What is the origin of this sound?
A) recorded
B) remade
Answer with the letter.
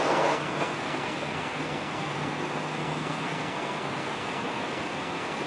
B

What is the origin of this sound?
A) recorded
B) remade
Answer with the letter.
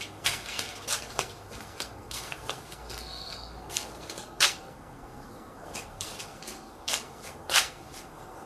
B